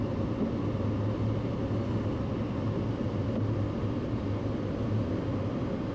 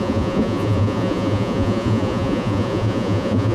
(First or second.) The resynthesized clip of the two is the second